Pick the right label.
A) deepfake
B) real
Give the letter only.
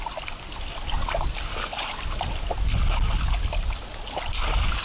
B